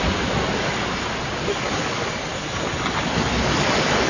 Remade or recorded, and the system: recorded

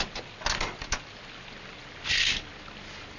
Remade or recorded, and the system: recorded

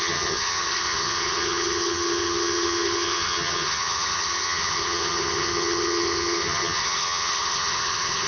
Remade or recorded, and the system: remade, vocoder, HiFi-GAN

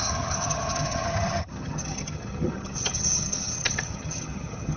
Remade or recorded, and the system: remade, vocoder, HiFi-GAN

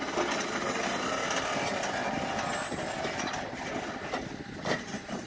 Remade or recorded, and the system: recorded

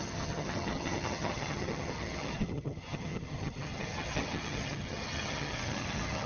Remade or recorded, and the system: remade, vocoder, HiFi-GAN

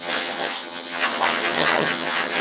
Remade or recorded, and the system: remade, vocoder, HiFi-GAN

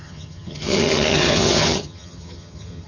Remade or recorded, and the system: remade, vocoder, HiFi-GAN